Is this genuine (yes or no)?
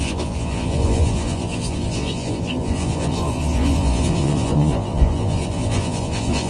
no